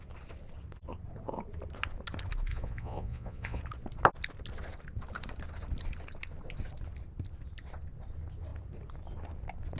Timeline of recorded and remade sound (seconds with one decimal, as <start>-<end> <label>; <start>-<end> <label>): 0.0-2.5 recorded; 2.5-3.6 remade; 3.6-9.8 recorded